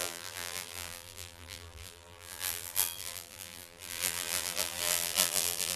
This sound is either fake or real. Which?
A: fake